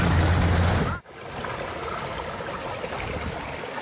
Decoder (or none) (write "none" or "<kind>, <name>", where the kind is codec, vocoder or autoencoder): none